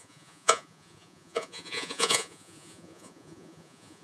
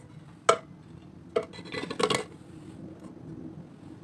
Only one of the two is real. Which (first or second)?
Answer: second